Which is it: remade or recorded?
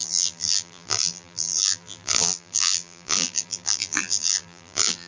remade